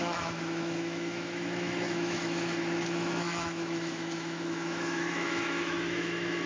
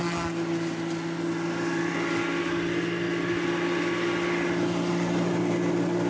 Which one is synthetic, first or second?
first